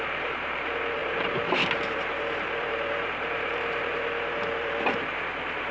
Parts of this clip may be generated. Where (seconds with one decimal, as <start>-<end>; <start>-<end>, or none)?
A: 0.0-5.7